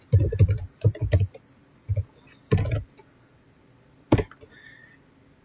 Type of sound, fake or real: real